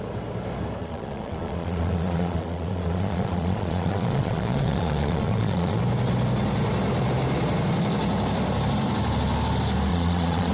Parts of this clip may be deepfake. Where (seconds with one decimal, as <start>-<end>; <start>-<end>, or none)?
0.8-5.8; 9.9-10.5